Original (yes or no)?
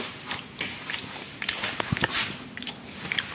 yes